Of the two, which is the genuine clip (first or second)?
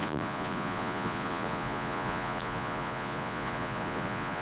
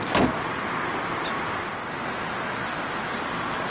second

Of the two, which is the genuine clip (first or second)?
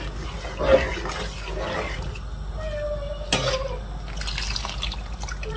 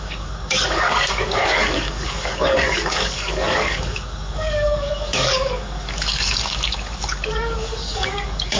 first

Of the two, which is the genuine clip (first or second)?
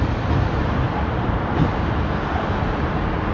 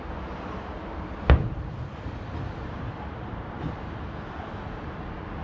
second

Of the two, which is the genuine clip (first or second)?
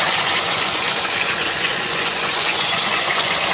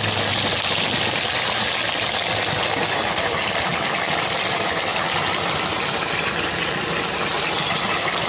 second